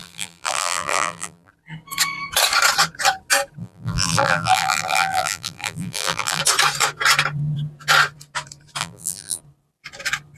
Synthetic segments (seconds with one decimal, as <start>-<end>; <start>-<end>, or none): 0.0-1.5; 3.6-6.4; 8.8-9.4